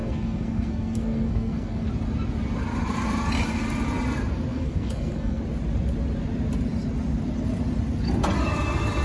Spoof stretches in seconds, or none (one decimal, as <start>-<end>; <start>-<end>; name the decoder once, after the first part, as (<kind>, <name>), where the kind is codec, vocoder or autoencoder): 0.0-1.9 (codec, SNAC); 4.5-5.4